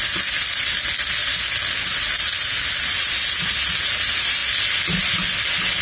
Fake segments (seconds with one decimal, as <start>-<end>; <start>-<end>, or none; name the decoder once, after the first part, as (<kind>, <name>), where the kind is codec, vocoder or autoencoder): none